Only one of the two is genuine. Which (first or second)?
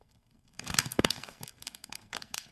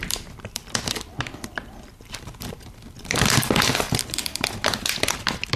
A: second